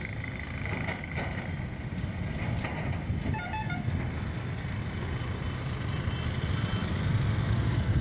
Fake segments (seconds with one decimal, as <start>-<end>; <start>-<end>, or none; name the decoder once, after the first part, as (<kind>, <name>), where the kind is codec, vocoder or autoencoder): 6.9-8.0 (codec, SNAC)